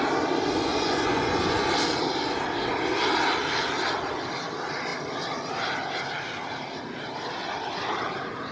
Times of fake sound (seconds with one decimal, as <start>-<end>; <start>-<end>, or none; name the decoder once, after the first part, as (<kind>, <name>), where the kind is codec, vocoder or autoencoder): 0.7-1.7 (vocoder, Vocos)